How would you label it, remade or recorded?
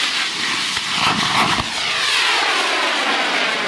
recorded